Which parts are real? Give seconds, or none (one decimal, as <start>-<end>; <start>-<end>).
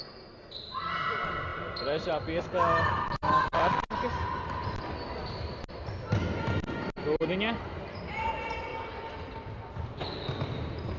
0.0-11.0